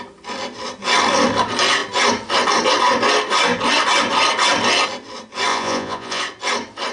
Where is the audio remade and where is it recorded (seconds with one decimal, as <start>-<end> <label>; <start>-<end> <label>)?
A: 0.0-5.5 recorded; 5.5-6.2 remade; 6.2-6.9 recorded